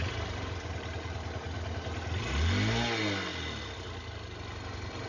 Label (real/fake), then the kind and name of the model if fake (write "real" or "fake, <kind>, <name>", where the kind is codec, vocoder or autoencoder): real